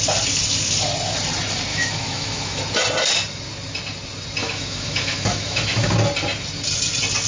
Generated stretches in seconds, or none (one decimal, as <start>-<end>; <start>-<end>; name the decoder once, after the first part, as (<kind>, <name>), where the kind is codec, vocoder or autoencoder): 1.7-2.6 (autoencoder, DAC-VAE); 4.4-5.9

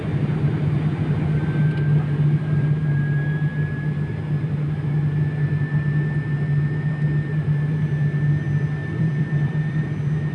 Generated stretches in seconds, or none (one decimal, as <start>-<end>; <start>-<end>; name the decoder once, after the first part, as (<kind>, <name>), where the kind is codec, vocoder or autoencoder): 8.8-9.9 (vocoder, BigVGAN v2)

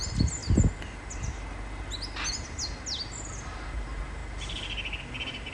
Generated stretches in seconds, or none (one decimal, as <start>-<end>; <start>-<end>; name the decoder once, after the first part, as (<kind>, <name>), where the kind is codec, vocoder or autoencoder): none

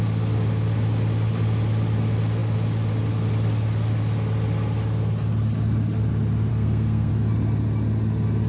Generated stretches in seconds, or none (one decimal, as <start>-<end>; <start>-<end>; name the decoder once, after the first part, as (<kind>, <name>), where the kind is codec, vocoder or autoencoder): 6.5-7.1 (codec, SNAC)

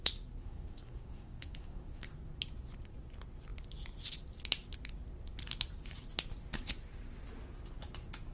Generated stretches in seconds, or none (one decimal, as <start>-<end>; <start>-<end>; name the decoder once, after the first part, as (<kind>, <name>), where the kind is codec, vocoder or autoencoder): 0.4-2.1 (codec, SNAC)

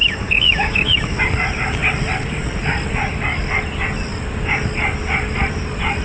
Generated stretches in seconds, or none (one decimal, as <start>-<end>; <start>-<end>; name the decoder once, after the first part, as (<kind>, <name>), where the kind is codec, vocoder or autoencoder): 0.0-1.2 (autoencoder, DAC-VAE)

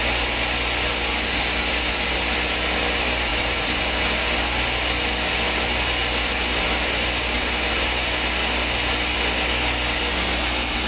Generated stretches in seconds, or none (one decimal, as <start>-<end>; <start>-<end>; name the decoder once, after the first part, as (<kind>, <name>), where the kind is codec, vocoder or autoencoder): 3.3-3.8 (vocoder, BigVGAN v2)

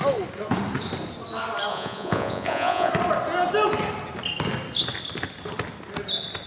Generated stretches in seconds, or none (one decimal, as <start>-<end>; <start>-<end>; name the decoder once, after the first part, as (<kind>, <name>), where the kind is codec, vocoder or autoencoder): 1.7-2.9 (vocoder, Vocos)